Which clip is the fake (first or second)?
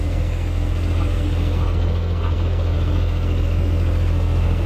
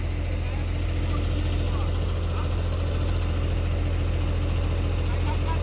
first